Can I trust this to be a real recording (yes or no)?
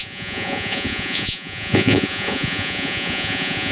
no